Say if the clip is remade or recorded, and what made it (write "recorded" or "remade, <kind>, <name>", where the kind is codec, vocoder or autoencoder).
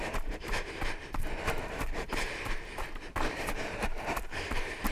remade, vocoder, BigVGAN v2